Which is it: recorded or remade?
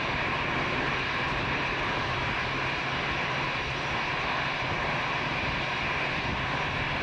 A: recorded